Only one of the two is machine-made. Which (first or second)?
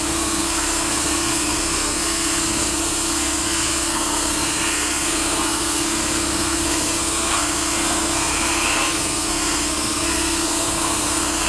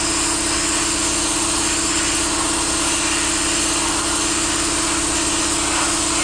first